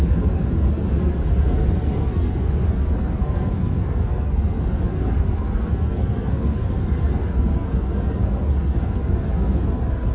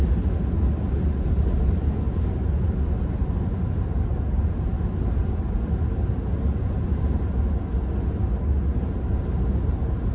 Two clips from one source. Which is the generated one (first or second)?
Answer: first